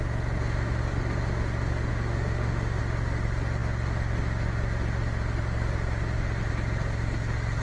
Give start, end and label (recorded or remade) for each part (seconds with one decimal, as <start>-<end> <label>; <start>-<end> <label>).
0.0-1.9 recorded; 1.9-2.8 remade; 2.8-7.6 recorded